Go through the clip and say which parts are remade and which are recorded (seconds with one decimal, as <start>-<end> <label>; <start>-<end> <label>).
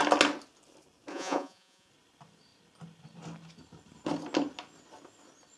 0.0-1.1 recorded; 1.1-1.9 remade; 1.9-5.6 recorded